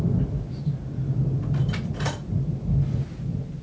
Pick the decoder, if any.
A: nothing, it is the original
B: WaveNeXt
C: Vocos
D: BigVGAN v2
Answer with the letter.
A